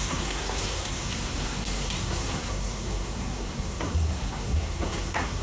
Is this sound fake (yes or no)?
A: yes